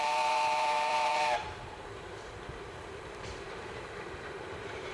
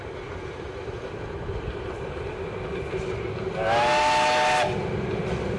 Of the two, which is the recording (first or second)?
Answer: second